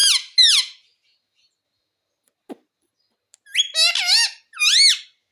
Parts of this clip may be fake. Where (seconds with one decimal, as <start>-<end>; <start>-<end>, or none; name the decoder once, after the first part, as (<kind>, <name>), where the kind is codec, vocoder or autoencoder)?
none